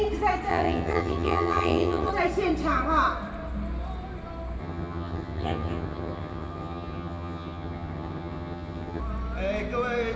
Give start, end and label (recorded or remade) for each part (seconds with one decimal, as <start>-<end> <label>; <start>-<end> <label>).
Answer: 0.0-0.5 recorded; 0.5-2.1 remade; 2.1-4.6 recorded; 4.6-9.0 remade; 9.0-10.2 recorded